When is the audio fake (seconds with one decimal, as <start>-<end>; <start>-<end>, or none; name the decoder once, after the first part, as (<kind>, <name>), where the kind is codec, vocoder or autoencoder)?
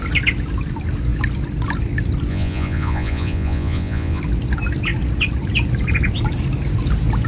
2.3-4.2 (vocoder, Vocos)